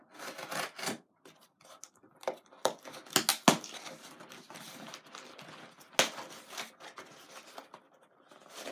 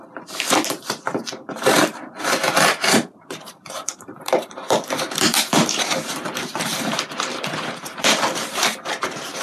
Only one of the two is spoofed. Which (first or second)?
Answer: second